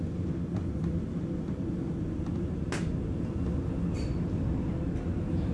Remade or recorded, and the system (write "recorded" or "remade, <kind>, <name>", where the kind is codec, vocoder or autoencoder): recorded